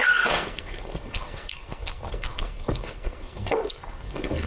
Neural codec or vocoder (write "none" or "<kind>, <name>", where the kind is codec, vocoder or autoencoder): codec, SNAC